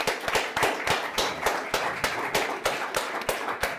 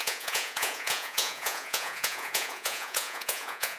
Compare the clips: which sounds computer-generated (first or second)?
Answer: second